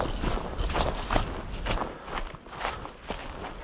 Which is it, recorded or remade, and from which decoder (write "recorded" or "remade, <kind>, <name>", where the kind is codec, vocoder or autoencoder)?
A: recorded